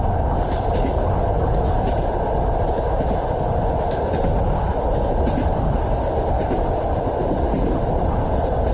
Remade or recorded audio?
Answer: recorded